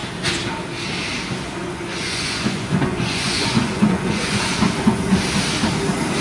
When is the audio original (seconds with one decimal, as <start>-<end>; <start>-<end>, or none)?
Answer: 0.0-1.6; 5.1-6.2